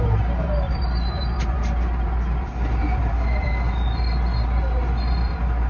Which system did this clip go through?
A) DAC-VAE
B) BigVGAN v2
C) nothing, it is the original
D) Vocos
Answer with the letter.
C